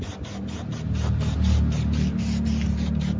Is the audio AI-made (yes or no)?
no